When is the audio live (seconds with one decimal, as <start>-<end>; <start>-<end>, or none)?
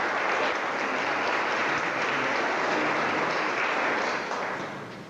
0.0-5.1